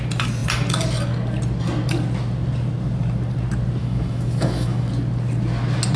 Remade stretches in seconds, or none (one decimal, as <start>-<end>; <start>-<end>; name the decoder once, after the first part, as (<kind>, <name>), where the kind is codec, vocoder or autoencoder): 3.8-4.9 (autoencoder, DAC-VAE)